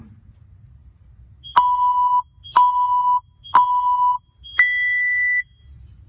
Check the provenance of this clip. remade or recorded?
recorded